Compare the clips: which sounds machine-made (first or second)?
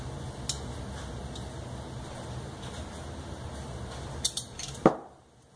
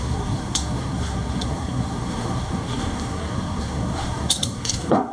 second